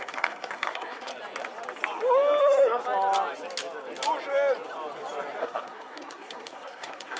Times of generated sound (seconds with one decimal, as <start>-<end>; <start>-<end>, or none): 0.0-1.1; 2.4-2.8; 5.4-7.2